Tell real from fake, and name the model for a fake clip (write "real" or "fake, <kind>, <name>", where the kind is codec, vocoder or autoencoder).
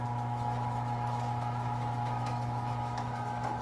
fake, autoencoder, DAC-VAE